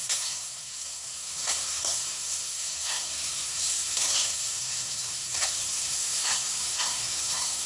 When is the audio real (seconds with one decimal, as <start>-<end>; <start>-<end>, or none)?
none